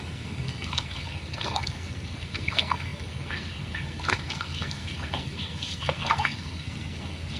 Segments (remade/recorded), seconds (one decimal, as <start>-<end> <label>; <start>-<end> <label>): 0.0-7.4 remade